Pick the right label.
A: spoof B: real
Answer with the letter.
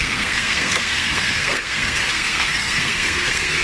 A